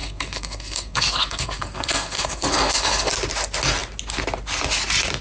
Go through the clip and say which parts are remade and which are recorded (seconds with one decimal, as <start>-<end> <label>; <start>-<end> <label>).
0.0-3.1 remade; 3.1-5.2 recorded